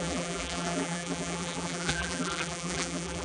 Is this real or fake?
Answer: fake